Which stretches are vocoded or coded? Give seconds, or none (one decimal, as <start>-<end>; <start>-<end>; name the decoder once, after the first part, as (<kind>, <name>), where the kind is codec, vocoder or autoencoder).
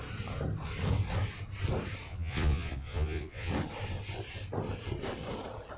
2.1-3.5 (vocoder, Vocos)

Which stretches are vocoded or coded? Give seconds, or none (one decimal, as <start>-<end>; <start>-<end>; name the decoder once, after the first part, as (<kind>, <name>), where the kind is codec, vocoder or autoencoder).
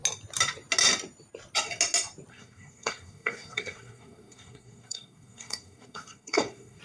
2.3-6.8 (codec, SNAC)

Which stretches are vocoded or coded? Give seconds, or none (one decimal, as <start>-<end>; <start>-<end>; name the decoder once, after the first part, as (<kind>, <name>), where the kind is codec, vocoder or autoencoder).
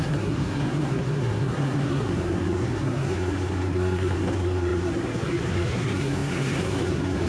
0.0-7.3 (codec, SNAC)